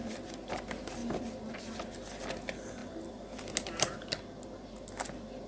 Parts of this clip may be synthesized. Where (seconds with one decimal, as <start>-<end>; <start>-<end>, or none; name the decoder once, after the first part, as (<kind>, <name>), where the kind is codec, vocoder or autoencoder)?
none

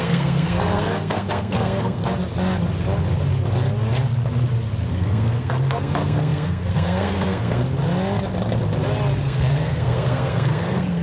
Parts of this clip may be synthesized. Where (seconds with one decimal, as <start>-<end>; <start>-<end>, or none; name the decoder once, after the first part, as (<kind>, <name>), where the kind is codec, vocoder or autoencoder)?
0.0-2.0 (codec, SNAC); 4.9-7.6; 9.2-11.0

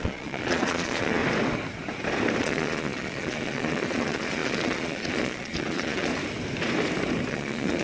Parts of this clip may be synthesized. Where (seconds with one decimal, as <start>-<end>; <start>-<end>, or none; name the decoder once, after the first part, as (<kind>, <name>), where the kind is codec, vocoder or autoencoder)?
0.0-1.2 (vocoder, Vocos); 2.4-6.1; 7.3-7.8